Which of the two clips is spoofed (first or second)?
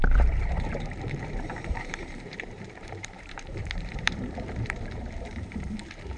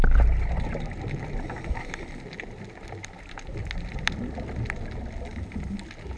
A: first